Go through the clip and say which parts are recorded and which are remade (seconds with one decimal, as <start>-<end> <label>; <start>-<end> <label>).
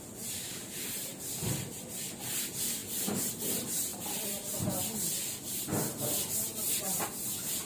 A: 0.0-7.7 recorded